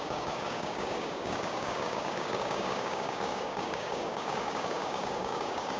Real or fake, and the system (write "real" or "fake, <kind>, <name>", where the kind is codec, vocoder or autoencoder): fake, codec, DAC